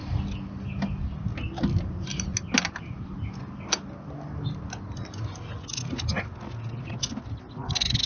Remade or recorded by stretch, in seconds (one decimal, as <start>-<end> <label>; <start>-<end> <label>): 0.0-8.1 recorded